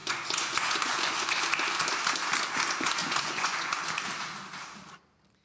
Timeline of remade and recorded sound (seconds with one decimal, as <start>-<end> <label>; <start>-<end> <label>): 0.0-1.4 remade; 1.4-3.0 recorded; 3.0-3.8 remade; 3.8-5.4 recorded